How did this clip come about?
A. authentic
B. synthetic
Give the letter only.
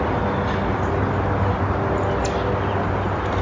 A